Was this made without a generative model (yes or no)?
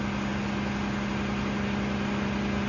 yes